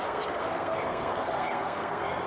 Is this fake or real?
fake